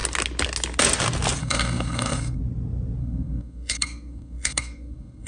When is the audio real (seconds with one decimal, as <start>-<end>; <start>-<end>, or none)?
0.0-1.4; 2.4-3.0